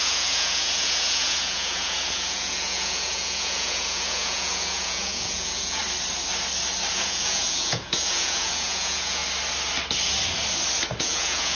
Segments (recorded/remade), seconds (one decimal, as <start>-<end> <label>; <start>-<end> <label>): 0.0-5.8 remade; 5.8-6.9 recorded; 6.9-9.2 remade; 9.2-11.0 recorded; 11.0-11.5 remade